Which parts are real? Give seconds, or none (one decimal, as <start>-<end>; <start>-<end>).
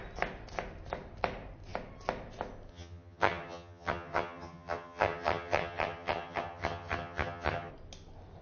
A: 0.0-2.7; 7.7-8.4